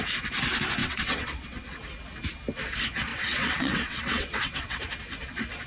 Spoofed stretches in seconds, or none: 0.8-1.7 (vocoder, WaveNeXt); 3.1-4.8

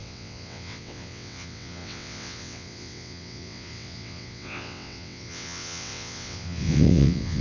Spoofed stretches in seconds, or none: 0.0-7.4 (vocoder, WaveNeXt)

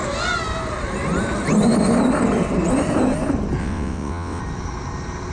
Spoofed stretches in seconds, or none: 3.6-4.4 (vocoder, WaveNeXt)

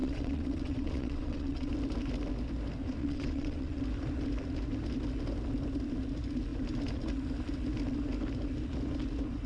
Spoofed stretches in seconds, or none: 0.0-1.7 (vocoder, WaveNeXt); 3.0-3.8

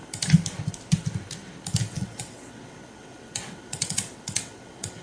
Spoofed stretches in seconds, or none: 1.9-5.0 (vocoder, WaveNeXt)

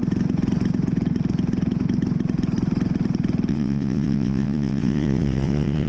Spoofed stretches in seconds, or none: 3.5-5.9 (vocoder, WaveNeXt)

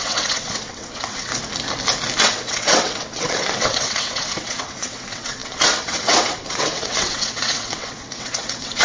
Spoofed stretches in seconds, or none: 0.0-1.3 (vocoder, WaveNeXt); 2.2-8.8

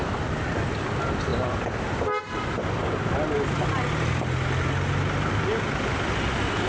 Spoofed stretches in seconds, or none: none